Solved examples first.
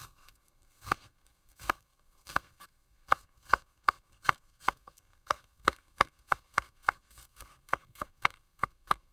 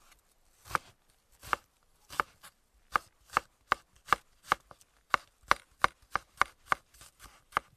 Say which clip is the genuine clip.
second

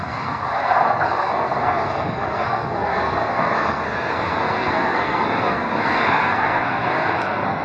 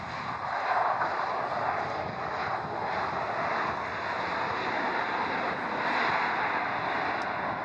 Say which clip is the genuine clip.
second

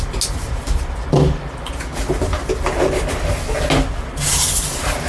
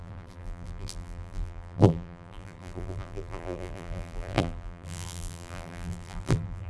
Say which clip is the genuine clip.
first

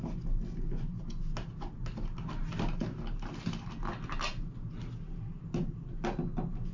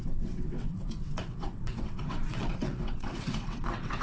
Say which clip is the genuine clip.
first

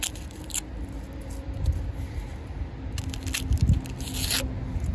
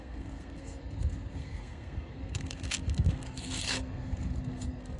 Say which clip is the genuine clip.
first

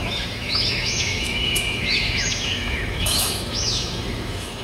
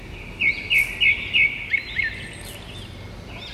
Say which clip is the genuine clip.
second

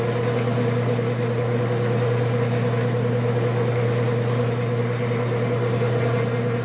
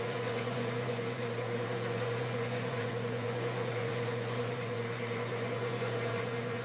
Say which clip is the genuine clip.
first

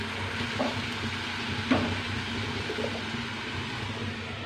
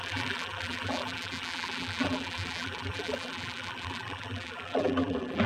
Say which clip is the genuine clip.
first